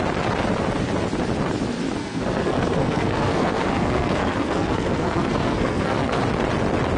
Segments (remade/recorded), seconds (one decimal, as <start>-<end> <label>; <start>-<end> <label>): 0.0-2.0 recorded; 2.0-6.2 remade; 6.2-7.0 recorded